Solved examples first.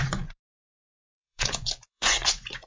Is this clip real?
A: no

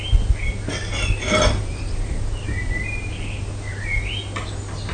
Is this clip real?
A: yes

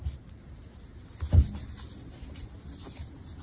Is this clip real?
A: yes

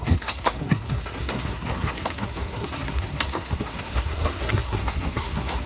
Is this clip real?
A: no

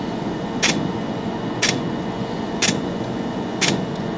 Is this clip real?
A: no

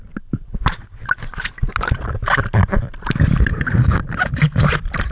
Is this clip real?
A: yes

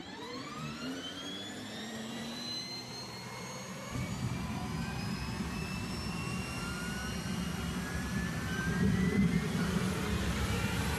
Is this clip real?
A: no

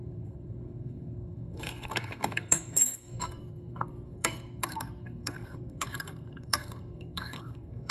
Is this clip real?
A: no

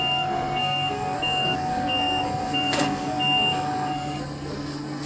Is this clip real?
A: no